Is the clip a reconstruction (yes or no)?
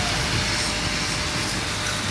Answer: no